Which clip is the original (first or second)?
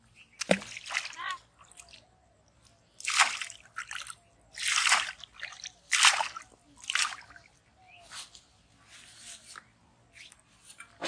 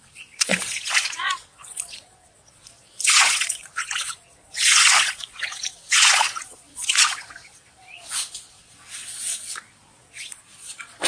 first